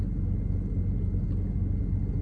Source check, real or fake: real